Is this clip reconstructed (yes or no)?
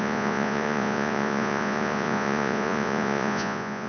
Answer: yes